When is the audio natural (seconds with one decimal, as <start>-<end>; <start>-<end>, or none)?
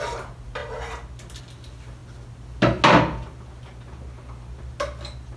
0.0-5.4